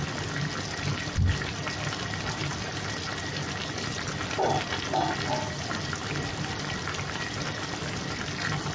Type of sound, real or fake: real